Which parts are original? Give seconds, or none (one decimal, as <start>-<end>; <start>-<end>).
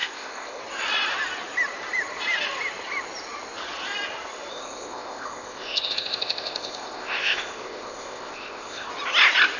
0.6-4.5; 8.9-9.6